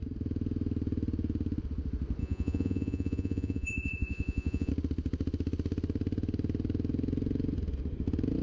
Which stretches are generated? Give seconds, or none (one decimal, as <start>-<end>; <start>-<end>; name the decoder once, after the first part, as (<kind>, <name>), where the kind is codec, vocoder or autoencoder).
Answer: 2.2-4.7 (vocoder, Vocos)